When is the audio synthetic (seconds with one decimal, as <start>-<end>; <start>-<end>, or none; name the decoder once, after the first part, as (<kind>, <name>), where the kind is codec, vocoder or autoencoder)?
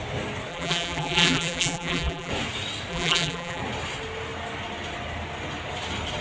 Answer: 0.5-2.3 (vocoder, BigVGAN v2); 2.9-3.6